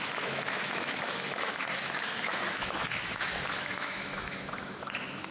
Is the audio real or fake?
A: fake